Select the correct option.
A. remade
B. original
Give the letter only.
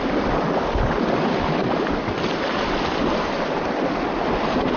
B